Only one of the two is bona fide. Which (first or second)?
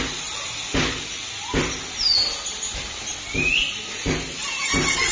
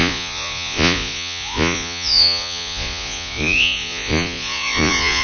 first